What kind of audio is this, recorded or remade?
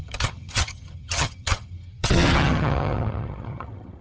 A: remade